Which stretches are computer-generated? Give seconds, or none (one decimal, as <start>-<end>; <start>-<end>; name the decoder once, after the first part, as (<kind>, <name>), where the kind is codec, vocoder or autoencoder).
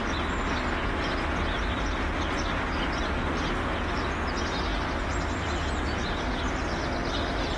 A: none